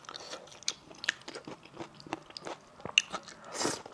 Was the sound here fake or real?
real